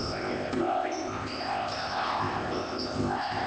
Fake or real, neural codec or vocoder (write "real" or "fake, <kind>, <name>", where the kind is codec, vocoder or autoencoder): fake, codec, ZipCodec